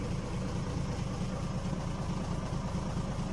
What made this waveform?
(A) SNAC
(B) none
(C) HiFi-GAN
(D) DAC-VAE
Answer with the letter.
B